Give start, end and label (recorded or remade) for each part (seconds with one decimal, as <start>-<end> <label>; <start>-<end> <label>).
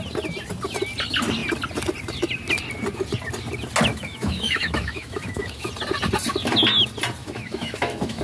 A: 0.0-3.9 recorded; 3.9-5.7 remade; 5.7-7.2 recorded; 7.2-8.2 remade